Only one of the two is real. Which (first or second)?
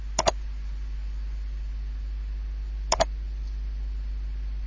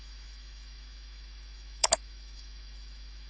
first